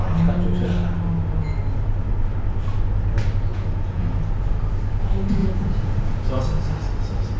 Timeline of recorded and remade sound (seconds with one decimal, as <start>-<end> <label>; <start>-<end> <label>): 0.0-3.5 recorded; 3.5-4.0 remade; 4.0-5.4 recorded; 5.4-6.4 remade; 6.4-7.4 recorded